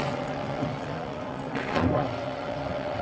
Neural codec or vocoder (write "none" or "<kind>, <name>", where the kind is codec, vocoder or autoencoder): vocoder, WaveNeXt